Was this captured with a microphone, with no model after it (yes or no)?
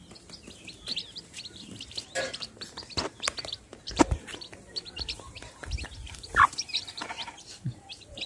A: no